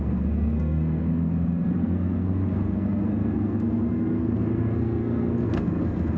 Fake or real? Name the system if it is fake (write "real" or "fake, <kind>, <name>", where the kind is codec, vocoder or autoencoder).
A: fake, codec, SNAC